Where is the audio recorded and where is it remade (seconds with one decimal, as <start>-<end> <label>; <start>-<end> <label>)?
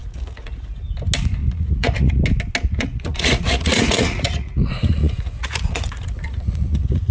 0.0-0.8 remade; 0.8-1.4 recorded; 1.4-2.2 remade; 2.2-2.7 recorded; 2.7-7.1 remade